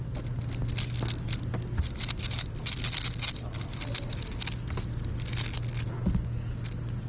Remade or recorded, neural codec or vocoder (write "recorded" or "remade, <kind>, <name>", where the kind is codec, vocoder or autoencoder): recorded